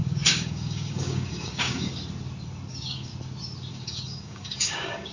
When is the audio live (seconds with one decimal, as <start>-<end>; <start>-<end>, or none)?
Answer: 1.9-2.7; 3.1-3.7